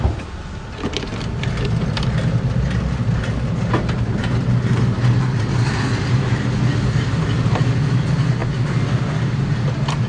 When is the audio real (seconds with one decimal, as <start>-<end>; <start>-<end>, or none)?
0.0-10.1

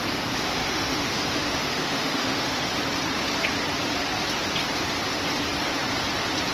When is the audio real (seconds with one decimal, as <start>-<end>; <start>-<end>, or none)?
0.0-0.6; 2.6-6.5

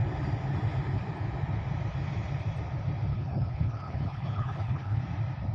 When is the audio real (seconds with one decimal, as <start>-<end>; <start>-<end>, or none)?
0.0-3.1; 5.0-5.5

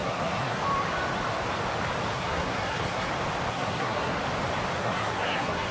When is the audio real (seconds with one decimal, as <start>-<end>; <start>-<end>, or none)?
0.6-2.1; 3.1-3.5; 4.2-4.8

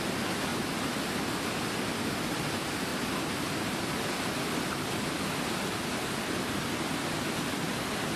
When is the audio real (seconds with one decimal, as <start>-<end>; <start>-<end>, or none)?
0.0-8.2

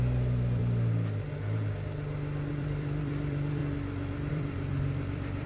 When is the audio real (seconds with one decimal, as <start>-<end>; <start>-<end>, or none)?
0.6-2.5; 3.6-4.3